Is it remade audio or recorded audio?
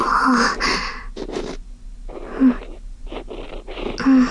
recorded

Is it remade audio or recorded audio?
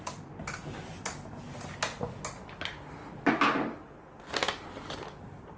recorded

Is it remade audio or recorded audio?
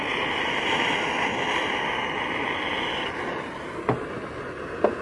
recorded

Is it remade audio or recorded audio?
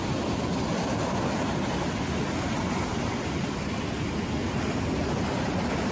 recorded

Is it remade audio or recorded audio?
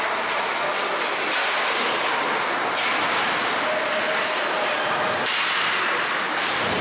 recorded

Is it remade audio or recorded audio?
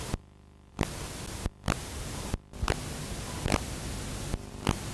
recorded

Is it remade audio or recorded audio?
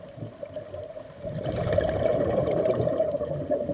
remade